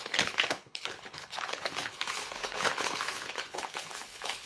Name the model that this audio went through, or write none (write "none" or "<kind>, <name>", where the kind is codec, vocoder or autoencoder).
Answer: codec, HILCodec